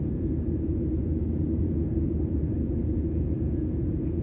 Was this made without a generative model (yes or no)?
no